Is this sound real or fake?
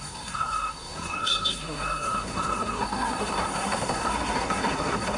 fake